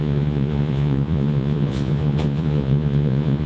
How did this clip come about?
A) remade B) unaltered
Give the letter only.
A